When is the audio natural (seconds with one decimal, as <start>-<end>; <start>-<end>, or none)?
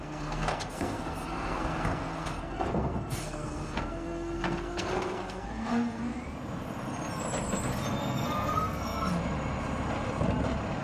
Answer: 6.1-8.0; 9.1-10.8